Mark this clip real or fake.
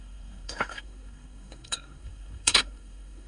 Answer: fake